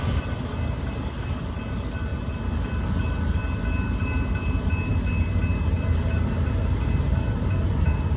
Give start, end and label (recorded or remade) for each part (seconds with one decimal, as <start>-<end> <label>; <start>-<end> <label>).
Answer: 0.0-8.2 recorded